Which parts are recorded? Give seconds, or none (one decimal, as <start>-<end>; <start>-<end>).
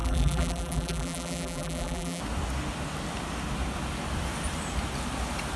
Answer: 2.2-5.6